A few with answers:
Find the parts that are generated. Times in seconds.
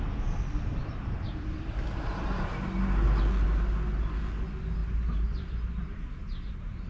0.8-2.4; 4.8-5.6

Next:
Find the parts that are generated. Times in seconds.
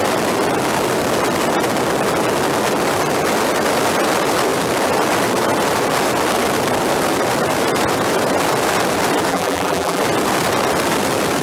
9.3-10.0